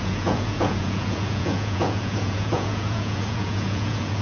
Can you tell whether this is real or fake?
fake